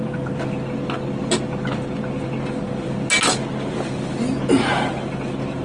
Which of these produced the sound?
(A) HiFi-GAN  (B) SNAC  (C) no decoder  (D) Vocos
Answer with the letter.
C